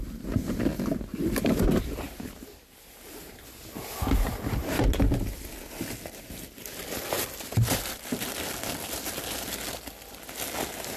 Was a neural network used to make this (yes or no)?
no